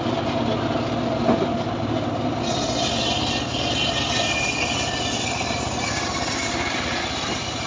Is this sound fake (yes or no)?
no